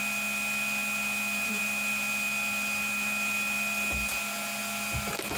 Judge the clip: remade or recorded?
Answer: recorded